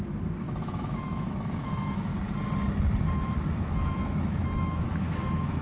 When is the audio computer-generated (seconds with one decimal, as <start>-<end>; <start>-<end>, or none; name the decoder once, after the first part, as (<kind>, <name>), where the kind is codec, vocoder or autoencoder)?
0.0-2.1 (autoencoder, DAC-VAE); 3.1-5.6